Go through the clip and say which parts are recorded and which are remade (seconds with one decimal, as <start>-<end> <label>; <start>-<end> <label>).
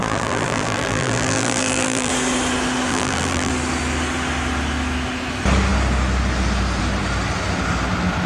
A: 0.0-2.1 remade; 2.1-2.9 recorded; 2.9-3.5 remade; 3.5-8.3 recorded